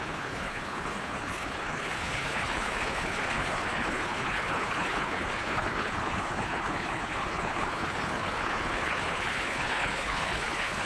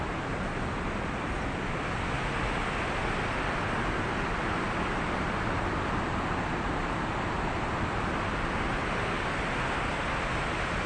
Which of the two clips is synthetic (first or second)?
first